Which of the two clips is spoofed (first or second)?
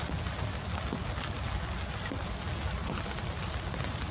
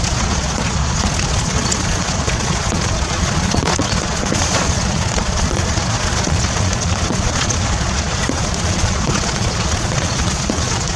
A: second